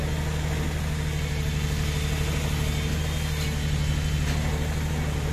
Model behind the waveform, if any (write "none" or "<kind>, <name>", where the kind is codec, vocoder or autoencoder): none